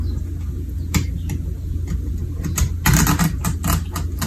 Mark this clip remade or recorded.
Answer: recorded